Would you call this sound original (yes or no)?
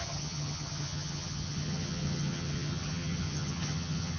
no